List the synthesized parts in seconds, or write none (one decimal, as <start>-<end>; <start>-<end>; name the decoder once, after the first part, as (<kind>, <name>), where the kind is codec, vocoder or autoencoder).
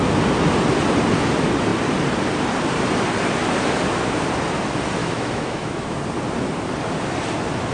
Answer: 5.0-6.0 (autoencoder, DAC-VAE)